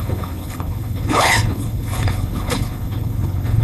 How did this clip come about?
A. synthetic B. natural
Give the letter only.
A